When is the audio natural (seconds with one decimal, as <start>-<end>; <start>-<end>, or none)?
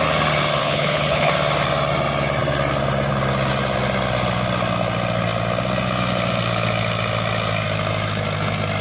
0.0-0.6; 1.3-8.8